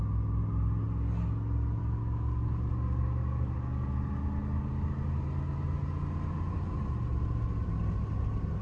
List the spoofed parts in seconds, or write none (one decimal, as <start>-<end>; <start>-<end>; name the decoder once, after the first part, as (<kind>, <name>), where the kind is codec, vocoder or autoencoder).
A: 1.8-2.7 (codec, DAC); 3.2-3.9